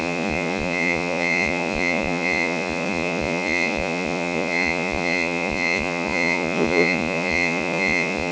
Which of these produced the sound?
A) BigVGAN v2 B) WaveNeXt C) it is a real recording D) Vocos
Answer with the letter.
D